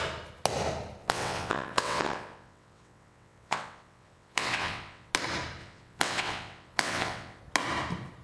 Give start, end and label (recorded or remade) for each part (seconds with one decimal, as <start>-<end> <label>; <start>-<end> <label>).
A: 0.0-1.0 recorded; 1.0-5.1 remade; 5.1-5.6 recorded; 5.6-7.4 remade; 7.4-8.2 recorded